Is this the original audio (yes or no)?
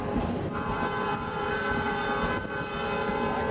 yes